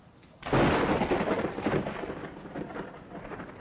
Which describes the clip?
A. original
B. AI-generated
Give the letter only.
A